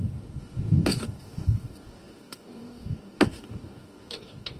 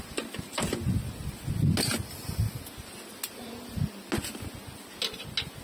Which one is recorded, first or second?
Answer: second